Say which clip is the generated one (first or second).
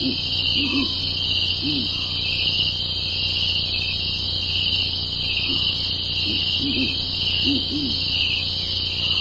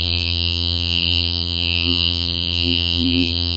second